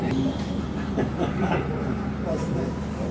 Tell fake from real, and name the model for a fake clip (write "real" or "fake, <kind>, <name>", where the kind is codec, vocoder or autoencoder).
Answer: real